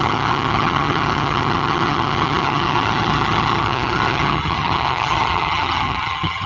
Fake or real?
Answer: fake